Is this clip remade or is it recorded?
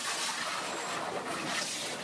recorded